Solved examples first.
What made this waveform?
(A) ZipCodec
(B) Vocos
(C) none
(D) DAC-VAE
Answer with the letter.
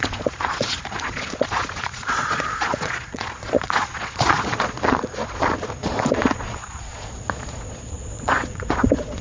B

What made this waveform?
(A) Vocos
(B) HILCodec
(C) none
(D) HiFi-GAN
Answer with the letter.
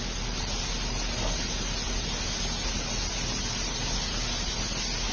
C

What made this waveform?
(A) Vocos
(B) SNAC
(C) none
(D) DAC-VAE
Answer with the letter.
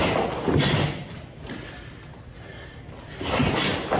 C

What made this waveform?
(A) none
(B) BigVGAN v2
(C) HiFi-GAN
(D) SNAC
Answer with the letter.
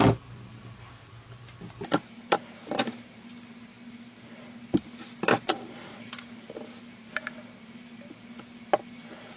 A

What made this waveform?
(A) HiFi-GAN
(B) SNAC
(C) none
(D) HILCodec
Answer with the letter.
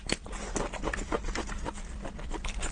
C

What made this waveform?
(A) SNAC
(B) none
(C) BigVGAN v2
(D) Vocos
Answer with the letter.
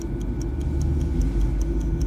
B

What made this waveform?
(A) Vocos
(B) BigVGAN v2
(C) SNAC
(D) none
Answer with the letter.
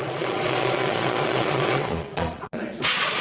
A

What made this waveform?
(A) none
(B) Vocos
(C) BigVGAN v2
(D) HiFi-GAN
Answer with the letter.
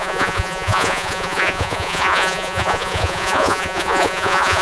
B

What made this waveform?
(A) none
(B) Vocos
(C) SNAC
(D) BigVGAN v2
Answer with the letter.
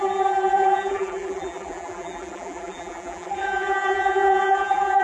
D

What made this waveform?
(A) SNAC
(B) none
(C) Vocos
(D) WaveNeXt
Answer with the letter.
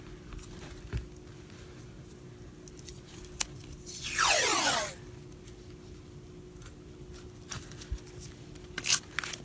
B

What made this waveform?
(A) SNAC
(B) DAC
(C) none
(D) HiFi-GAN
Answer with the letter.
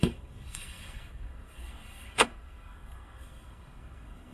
A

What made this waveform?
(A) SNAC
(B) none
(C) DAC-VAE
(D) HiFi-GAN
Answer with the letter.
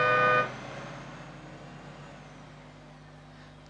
B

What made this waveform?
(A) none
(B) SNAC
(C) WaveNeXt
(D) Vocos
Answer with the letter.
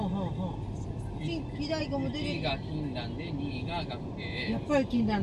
A